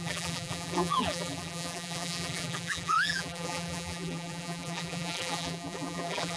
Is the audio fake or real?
fake